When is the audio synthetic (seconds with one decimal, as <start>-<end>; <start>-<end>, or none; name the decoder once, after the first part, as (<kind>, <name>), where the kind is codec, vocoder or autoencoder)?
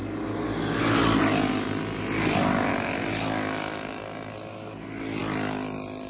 none